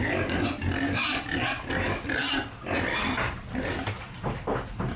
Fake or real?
real